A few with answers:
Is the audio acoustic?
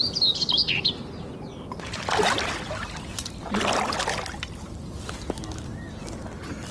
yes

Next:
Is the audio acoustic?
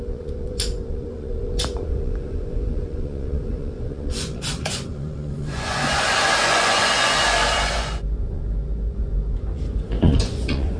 no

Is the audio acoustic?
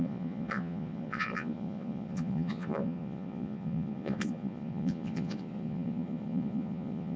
no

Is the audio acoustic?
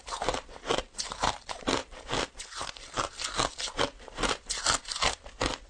yes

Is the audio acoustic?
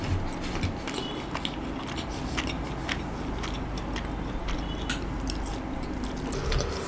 yes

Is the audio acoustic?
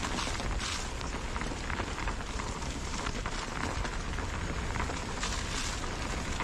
yes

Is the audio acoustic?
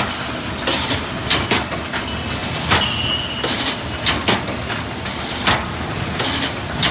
yes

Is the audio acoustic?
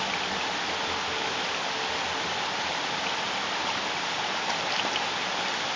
yes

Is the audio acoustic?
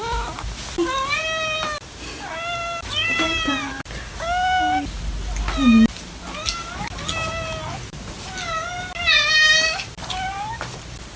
yes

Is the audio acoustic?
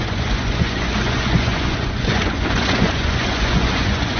no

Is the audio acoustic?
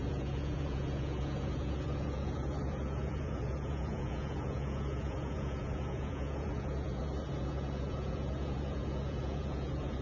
no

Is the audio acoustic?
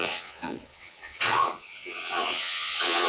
no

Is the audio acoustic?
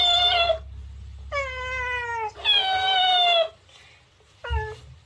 yes